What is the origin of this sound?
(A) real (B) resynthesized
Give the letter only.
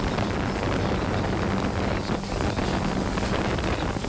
A